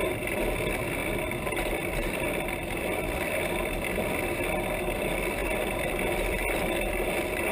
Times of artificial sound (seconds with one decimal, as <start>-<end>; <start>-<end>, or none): 1.0-4.4; 5.4-7.1